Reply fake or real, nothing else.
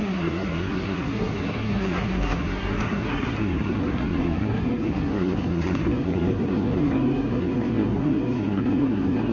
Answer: fake